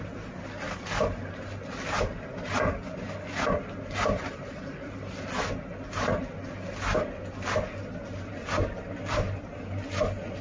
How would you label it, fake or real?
real